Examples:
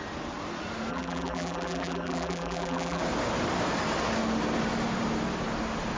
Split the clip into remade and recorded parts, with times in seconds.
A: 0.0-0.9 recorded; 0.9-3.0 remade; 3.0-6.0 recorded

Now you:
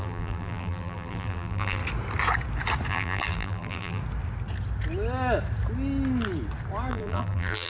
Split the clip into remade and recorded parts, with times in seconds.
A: 0.0-1.8 remade; 1.8-2.9 recorded; 2.9-4.0 remade; 4.0-6.9 recorded; 6.9-7.7 remade

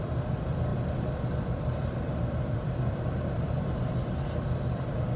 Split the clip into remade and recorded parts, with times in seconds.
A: 0.0-0.7 recorded; 0.7-3.8 remade; 3.8-5.2 recorded